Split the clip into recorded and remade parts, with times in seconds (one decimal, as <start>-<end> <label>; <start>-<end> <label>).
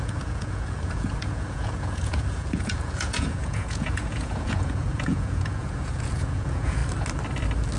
0.0-6.8 remade; 6.8-7.8 recorded